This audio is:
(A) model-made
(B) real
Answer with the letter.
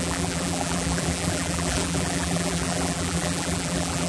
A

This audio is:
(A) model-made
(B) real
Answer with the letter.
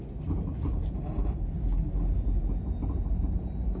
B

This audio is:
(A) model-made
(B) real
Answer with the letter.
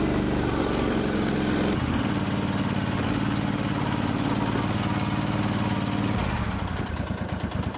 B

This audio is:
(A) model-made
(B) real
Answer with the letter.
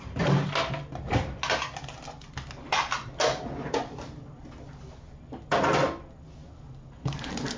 B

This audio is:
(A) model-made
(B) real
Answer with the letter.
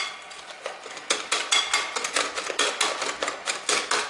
B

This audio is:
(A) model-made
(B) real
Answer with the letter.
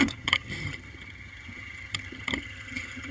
A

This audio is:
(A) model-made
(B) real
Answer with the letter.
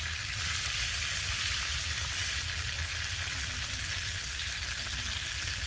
B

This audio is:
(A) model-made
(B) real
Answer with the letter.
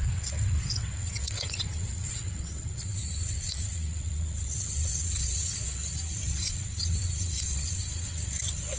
A